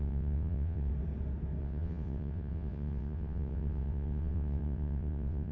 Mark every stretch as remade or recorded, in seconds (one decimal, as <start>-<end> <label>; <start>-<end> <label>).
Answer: 0.0-0.9 remade; 0.9-1.6 recorded; 1.6-5.5 remade